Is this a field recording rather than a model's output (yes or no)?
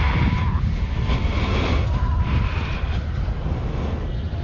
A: yes